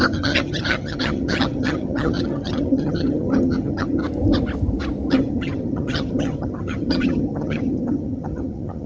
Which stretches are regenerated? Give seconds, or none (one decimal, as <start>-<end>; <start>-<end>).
0.0-4.0; 5.1-8.9